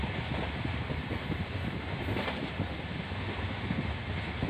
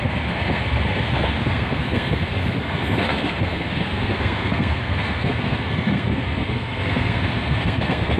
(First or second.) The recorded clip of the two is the first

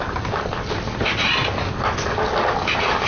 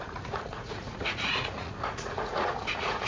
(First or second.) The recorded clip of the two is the first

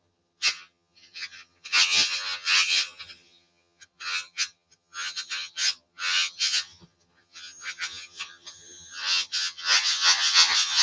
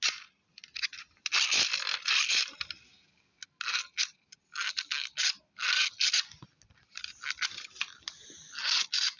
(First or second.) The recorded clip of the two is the second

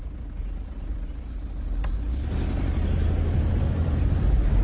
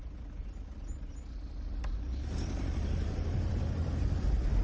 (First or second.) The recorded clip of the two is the first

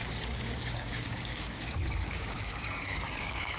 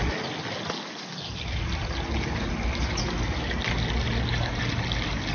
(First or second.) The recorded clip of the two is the second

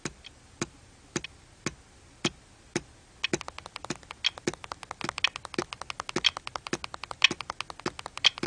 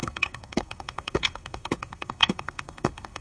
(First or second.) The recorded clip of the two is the first